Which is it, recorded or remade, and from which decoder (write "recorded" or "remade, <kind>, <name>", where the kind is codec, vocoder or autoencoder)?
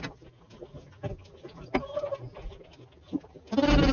recorded